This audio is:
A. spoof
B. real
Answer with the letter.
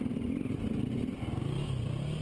B